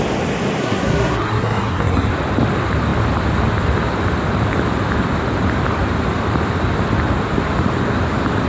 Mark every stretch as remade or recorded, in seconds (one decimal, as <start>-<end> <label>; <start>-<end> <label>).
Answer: 0.0-0.6 recorded; 0.6-2.1 remade; 2.1-8.5 recorded